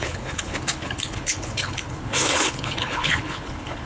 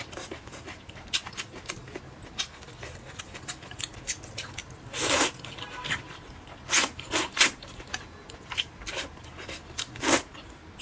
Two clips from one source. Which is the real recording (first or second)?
second